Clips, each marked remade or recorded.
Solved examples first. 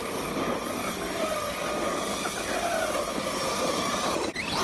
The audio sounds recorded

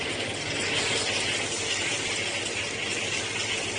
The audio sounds recorded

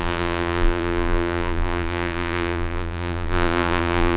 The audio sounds remade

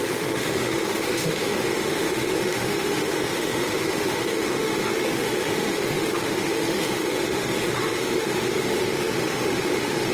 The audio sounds remade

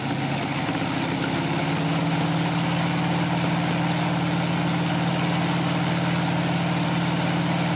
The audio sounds recorded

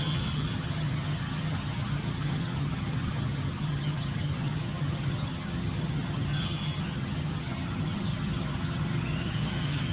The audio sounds remade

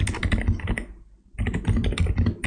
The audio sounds recorded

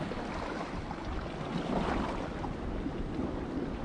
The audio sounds recorded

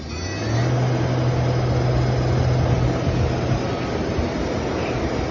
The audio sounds recorded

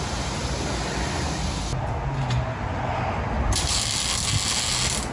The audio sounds recorded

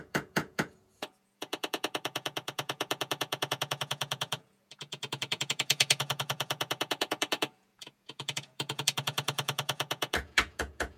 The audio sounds remade